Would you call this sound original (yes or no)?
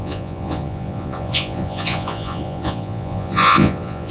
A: no